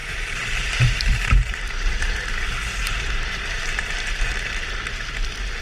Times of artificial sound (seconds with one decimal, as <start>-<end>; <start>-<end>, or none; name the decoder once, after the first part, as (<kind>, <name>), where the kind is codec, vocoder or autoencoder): 0.0-2.3 (vocoder, BigVGAN v2); 2.7-4.3